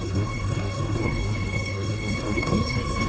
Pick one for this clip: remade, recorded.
remade